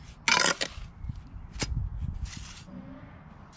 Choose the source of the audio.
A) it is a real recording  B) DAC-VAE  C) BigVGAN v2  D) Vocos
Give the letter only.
A